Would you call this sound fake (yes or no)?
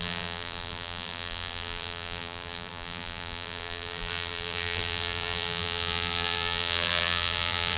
yes